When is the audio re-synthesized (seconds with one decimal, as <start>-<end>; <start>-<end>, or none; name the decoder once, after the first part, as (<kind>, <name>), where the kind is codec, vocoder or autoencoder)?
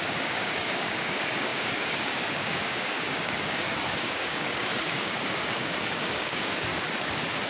0.0-6.7 (codec, DAC)